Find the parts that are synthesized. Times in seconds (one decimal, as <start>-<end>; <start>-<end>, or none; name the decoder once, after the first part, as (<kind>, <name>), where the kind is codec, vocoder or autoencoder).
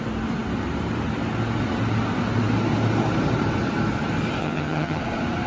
4.4-5.0 (vocoder, HiFi-GAN)